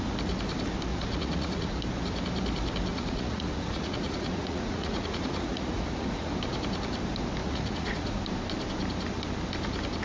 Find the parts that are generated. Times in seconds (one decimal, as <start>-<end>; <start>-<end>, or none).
0.9-1.8; 2.9-6.3; 7.4-8.2